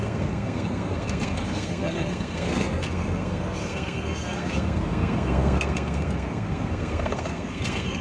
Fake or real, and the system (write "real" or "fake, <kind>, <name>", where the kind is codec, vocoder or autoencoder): fake, codec, SNAC